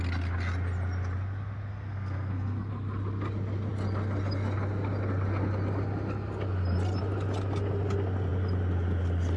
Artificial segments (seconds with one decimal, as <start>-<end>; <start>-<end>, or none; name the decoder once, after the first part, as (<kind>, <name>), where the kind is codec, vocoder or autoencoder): 1.7-2.7 (codec, SNAC)